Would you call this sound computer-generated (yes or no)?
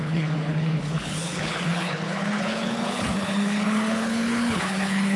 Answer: yes